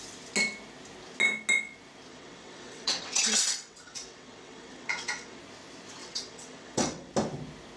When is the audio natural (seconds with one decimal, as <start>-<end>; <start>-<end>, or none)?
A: 0.0-2.1; 5.4-6.0; 7.1-7.8